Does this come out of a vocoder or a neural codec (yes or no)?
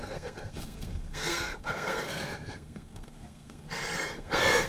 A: yes